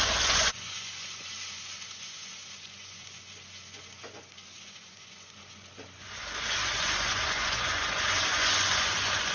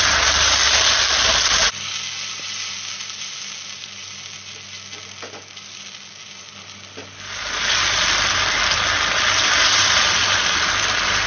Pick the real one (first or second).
second